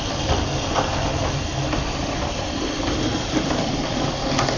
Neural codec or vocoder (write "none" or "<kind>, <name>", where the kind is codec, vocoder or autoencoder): none